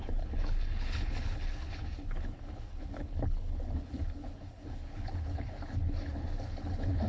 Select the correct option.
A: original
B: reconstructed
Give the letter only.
B